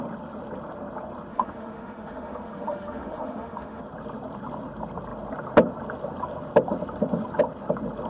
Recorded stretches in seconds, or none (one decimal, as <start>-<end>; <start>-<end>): 0.0-1.3; 3.8-8.1